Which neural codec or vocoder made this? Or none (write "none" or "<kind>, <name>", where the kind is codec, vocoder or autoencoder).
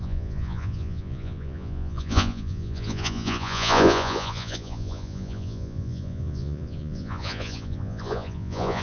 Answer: vocoder, Vocos